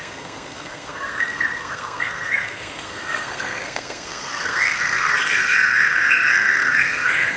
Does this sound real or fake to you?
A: fake